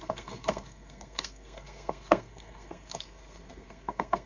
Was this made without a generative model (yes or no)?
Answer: no